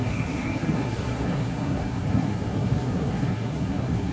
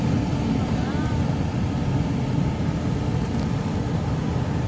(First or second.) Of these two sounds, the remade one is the first